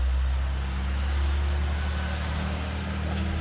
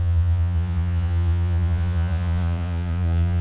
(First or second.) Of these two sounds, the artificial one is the second